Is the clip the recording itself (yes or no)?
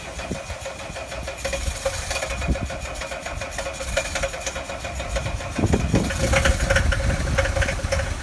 yes